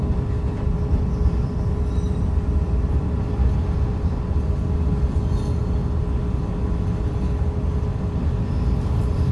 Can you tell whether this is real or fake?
real